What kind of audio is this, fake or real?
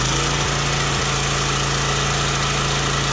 real